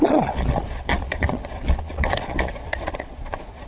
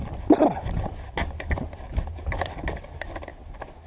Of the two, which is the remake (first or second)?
first